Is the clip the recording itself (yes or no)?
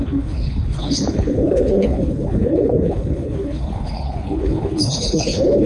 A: no